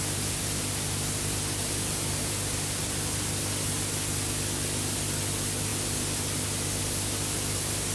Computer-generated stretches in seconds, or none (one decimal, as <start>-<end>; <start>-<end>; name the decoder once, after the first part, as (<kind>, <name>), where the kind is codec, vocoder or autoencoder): none